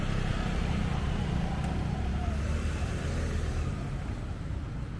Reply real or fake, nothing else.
fake